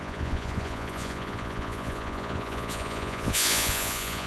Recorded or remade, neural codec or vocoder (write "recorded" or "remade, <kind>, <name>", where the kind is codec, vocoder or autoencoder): remade, vocoder, Vocos